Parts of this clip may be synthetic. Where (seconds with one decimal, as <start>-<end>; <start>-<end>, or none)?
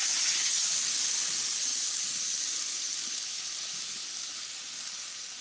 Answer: 0.0-0.5